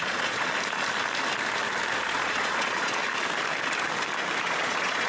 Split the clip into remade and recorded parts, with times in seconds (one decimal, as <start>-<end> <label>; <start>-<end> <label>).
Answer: 0.0-0.5 remade; 0.5-2.0 recorded; 2.0-3.0 remade; 3.0-4.4 recorded; 4.4-5.1 remade